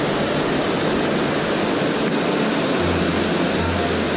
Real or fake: real